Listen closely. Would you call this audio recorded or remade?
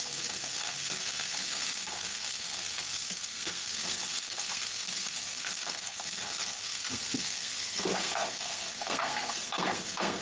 remade